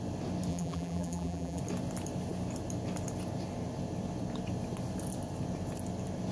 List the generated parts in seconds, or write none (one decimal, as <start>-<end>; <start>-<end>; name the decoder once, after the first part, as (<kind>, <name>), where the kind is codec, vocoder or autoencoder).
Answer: 0.5-1.6 (vocoder, BigVGAN v2)